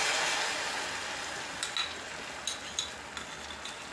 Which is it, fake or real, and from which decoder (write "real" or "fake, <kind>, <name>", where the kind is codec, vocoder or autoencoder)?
real